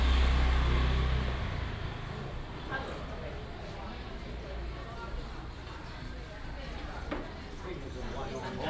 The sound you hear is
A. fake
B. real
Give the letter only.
B